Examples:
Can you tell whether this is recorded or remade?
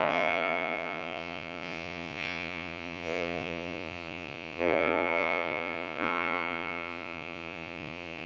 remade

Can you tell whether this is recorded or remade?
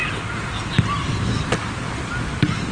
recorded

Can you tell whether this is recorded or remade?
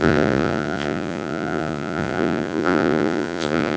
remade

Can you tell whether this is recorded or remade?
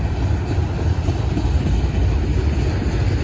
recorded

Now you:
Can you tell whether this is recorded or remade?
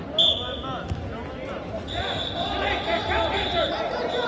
recorded